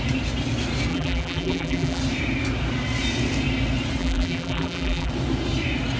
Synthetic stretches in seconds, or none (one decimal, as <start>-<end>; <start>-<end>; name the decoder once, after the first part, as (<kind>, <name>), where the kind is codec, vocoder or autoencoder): 0.9-2.0 (vocoder, BigVGAN v2); 4.0-5.1